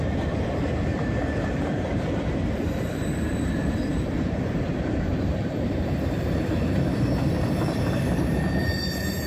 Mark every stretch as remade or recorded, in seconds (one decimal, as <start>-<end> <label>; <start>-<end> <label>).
0.0-9.3 remade